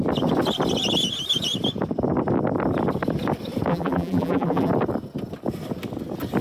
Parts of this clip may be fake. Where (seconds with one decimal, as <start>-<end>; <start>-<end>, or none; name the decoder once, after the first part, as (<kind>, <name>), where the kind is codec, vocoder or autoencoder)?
3.7-4.7 (vocoder, BigVGAN v2)